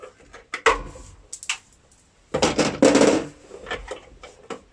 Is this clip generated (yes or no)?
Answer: no